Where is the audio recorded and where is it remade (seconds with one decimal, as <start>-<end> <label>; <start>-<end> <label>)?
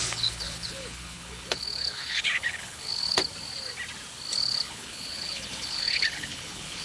0.0-3.2 remade; 3.2-4.3 recorded; 4.3-6.8 remade